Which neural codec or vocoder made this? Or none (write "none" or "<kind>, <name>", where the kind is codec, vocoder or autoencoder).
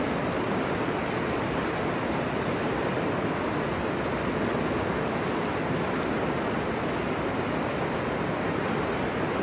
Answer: none